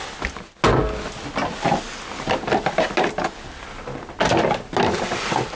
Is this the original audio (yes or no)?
yes